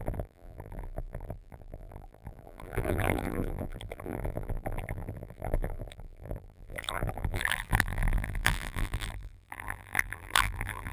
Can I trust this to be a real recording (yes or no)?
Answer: no